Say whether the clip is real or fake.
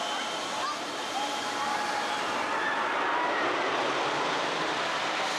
real